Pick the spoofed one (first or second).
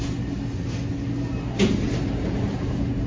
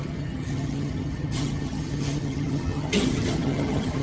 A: second